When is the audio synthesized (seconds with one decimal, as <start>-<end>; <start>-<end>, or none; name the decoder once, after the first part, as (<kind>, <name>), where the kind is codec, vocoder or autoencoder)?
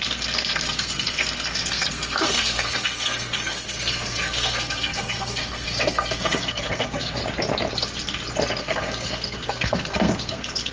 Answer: 0.0-7.2 (codec, SNAC); 8.6-10.7